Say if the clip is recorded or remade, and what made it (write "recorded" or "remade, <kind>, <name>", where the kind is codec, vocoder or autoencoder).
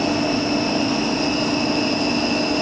recorded